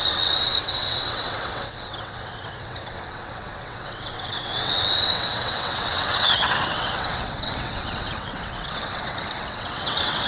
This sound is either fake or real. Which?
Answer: fake